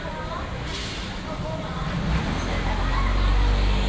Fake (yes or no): no